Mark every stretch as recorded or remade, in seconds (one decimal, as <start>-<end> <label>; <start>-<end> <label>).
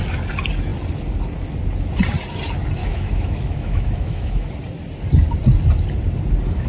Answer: 0.0-2.8 recorded; 2.8-4.5 remade; 4.5-6.7 recorded